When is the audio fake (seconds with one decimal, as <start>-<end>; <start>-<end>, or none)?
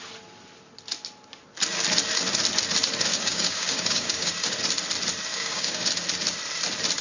3.1-4.3; 5.3-5.9